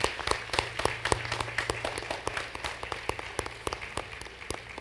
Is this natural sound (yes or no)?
yes